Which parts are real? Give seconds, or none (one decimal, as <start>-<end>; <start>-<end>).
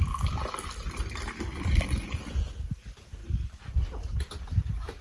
0.0-5.0